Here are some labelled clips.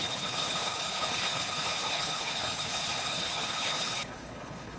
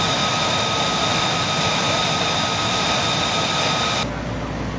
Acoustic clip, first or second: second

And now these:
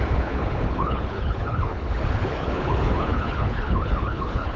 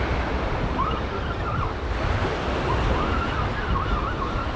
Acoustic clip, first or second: second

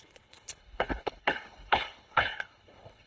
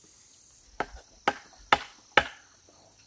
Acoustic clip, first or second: second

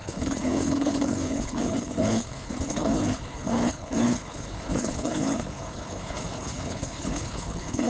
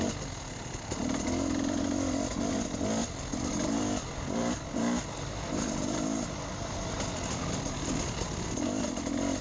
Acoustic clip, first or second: second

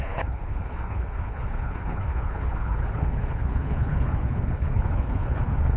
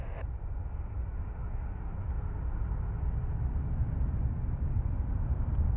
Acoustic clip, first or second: second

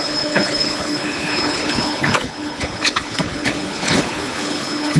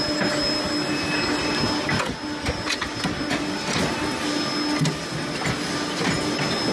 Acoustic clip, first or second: second